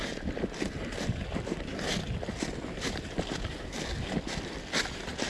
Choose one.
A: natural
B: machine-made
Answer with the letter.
A